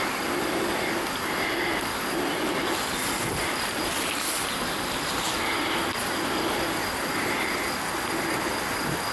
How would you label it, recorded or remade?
recorded